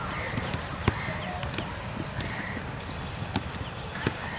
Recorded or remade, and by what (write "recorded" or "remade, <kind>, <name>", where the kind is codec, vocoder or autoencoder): remade, vocoder, BigVGAN v2